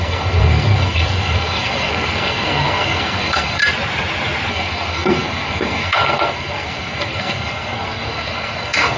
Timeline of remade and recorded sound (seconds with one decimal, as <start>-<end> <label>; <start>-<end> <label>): 0.0-3.6 remade; 3.6-4.5 recorded; 4.5-9.0 remade